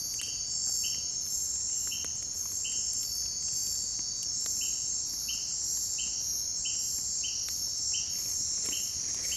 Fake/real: real